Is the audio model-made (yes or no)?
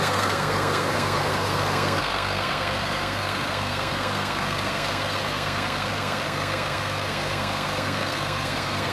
yes